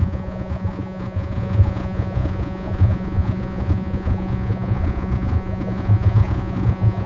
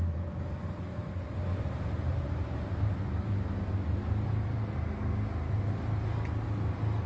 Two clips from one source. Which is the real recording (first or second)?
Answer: second